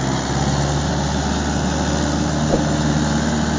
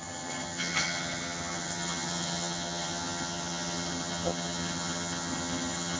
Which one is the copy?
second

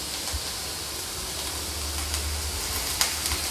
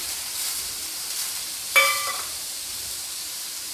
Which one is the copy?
second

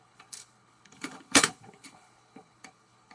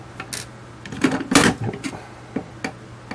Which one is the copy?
first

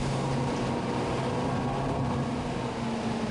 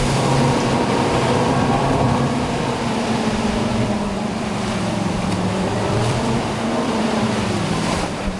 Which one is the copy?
second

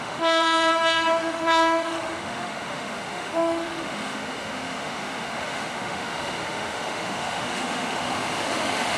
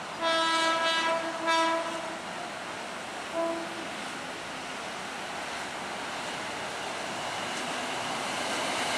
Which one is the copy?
first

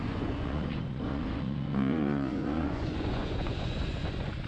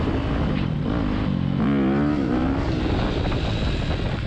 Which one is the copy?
first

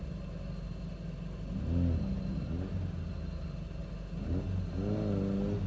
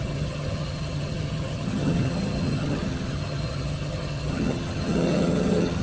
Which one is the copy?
second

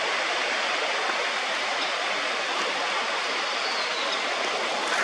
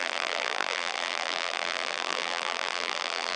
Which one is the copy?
second